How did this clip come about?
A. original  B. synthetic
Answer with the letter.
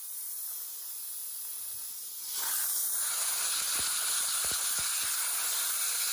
A